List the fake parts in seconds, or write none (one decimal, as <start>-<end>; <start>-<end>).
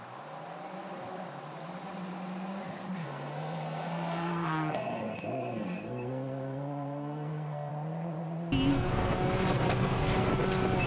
3.0-7.7; 8.7-10.3